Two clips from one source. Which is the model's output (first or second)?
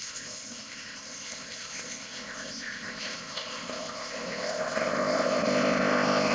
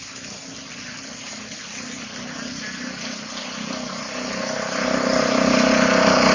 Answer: first